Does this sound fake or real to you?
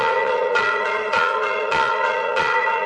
fake